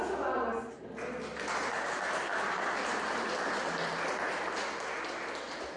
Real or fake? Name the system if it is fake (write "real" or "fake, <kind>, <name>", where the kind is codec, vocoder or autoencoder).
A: real